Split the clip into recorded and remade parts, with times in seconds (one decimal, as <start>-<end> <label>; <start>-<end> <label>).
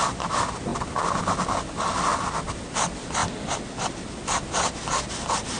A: 0.0-5.6 recorded